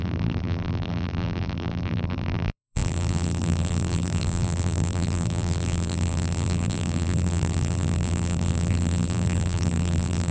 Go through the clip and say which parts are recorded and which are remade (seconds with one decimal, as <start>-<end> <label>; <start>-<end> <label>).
0.0-10.3 remade